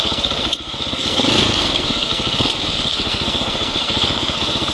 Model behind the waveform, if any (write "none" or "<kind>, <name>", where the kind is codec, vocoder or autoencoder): codec, SNAC